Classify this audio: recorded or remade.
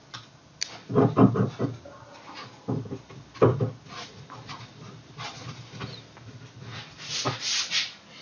recorded